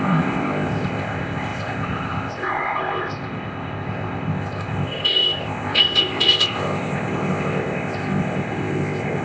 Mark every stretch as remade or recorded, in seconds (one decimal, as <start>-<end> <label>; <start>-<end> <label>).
0.0-9.2 remade